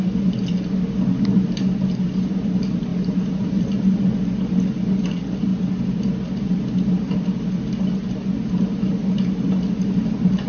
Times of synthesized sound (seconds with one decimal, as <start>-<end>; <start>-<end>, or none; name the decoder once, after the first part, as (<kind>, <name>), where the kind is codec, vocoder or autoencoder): none